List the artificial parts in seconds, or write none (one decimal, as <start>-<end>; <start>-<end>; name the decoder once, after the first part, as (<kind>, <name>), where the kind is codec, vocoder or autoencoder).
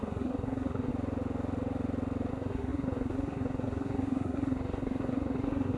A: 0.0-0.9 (codec, SNAC); 2.3-5.8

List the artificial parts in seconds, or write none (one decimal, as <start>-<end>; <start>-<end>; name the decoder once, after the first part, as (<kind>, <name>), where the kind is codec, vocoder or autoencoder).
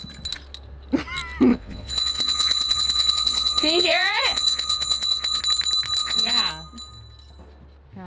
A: 1.5-5.4 (vocoder, Vocos); 6.0-6.5